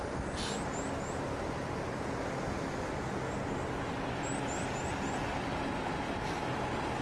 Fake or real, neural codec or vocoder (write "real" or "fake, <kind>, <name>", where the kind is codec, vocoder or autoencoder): real